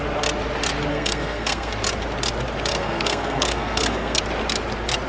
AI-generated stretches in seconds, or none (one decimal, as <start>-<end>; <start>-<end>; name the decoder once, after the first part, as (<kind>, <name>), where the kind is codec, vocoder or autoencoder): 0.9-1.7 (codec, SNAC); 2.7-4.2

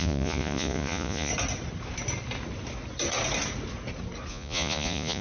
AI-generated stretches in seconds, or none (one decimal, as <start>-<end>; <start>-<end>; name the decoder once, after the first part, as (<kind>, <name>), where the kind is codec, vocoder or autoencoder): 0.0-1.3 (vocoder, Vocos); 4.3-5.2